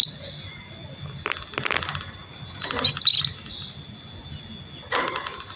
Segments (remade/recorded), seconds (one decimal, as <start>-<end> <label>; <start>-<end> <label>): 0.0-5.6 recorded